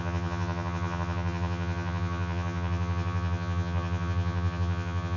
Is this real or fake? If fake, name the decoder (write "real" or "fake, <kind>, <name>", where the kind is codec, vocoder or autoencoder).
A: fake, vocoder, HiFi-GAN